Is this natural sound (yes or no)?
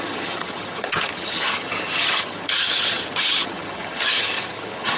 no